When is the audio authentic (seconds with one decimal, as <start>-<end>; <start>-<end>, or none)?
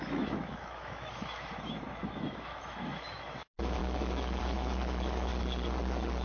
5.3-6.2